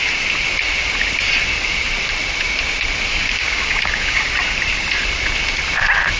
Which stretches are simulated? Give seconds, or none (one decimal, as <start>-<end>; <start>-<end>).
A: 3.1-4.2